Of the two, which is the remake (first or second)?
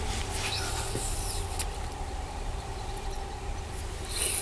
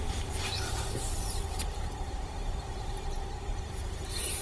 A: second